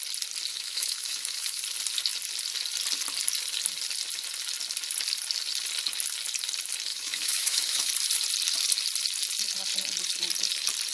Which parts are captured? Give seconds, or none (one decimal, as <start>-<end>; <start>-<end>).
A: 0.0-0.5; 1.6-6.9; 7.9-10.9